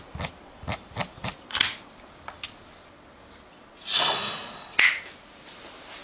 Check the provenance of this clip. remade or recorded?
recorded